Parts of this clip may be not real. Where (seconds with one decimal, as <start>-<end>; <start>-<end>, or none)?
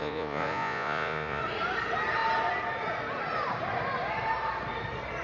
0.0-1.4